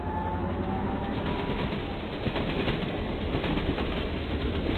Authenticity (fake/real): real